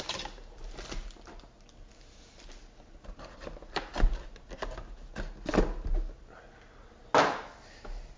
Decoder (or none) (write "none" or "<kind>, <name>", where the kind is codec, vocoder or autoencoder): none